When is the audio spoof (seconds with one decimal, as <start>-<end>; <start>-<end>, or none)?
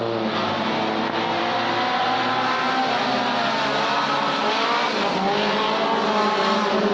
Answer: none